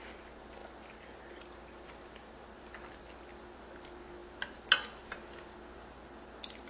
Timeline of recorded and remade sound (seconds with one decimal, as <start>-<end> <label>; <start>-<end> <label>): 0.0-6.7 recorded